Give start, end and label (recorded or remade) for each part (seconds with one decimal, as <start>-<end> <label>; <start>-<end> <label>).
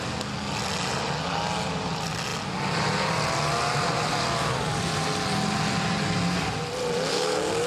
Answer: 0.0-7.1 recorded; 7.1-7.7 remade